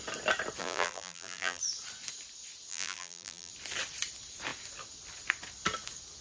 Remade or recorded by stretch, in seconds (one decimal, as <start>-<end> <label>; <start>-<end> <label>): 0.0-0.6 recorded; 0.6-1.6 remade; 1.6-2.7 recorded; 2.7-3.5 remade; 3.5-6.2 recorded